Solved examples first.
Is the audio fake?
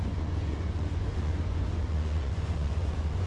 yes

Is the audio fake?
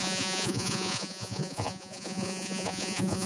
yes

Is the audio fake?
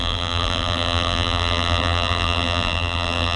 yes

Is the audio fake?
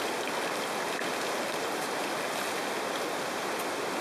no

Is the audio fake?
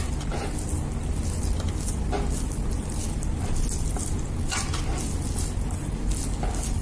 no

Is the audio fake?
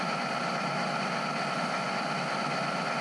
no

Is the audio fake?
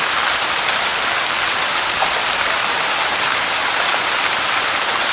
no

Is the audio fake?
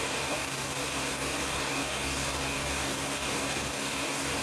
yes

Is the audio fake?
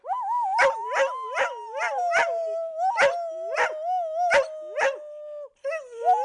no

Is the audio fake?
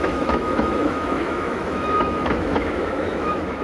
yes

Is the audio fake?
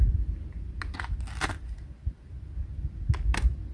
no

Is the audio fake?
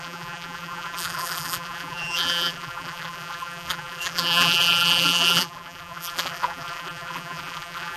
yes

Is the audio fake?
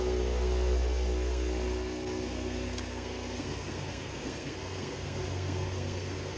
yes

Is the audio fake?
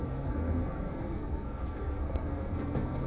yes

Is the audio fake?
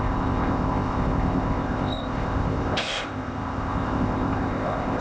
yes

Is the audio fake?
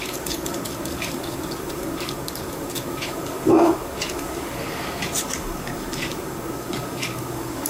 yes